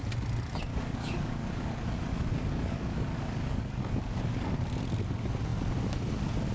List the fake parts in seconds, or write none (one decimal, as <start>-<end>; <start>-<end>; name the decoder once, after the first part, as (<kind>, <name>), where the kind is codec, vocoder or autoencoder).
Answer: 0.7-4.6 (codec, DAC)